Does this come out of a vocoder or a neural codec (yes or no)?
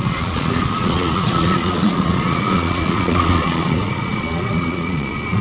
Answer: yes